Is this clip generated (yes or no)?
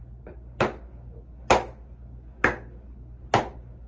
no